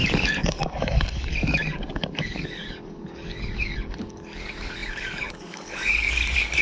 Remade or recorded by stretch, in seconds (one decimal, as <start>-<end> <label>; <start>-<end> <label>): 0.0-6.6 remade